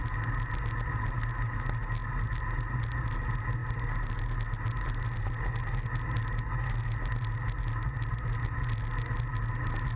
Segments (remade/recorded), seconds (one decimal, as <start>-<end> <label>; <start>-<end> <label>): 0.0-10.0 recorded